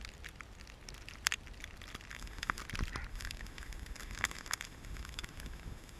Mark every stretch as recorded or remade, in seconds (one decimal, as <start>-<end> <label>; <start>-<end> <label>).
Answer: 0.0-2.1 recorded; 2.1-2.6 remade; 2.6-3.1 recorded; 3.1-6.0 remade